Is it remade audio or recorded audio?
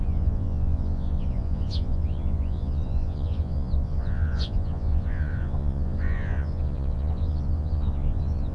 remade